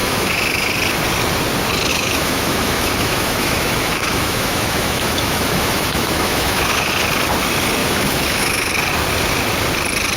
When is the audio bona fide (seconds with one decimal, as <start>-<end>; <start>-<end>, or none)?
0.7-1.9; 6.9-7.8; 8.7-10.2

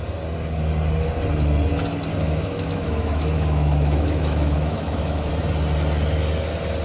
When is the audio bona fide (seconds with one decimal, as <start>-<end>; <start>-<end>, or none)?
0.0-2.1; 5.3-6.8